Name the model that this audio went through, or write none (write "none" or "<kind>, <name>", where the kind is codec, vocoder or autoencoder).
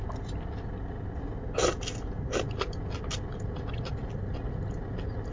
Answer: none